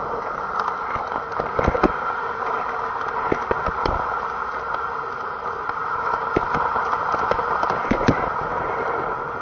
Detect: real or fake fake